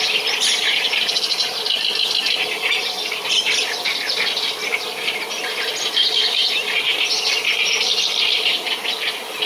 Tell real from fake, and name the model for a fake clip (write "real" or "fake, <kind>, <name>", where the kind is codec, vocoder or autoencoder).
fake, vocoder, BigVGAN v2